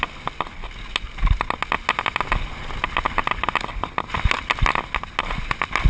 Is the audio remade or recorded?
recorded